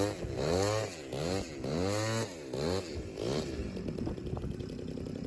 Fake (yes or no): no